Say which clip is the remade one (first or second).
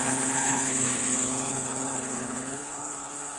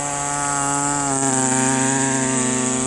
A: first